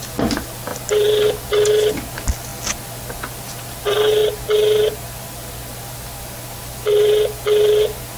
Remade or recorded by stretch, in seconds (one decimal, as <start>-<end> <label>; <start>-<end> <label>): 0.0-8.2 recorded